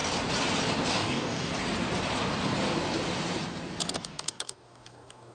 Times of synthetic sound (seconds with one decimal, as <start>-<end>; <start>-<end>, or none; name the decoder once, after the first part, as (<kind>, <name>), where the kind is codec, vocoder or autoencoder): 0.9-1.5 (codec, DAC); 3.9-5.3